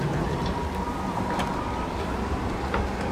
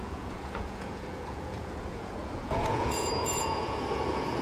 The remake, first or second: second